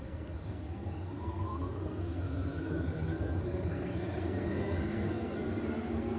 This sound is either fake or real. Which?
fake